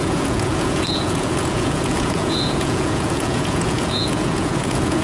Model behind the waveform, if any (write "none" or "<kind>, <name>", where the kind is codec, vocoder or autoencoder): vocoder, Vocos